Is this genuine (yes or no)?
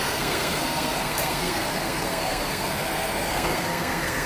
no